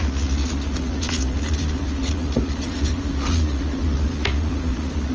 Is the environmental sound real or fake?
fake